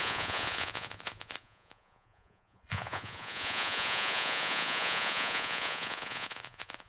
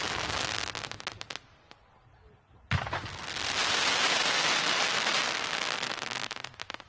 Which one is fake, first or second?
first